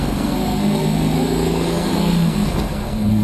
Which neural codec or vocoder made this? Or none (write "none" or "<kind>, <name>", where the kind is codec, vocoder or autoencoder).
codec, SNAC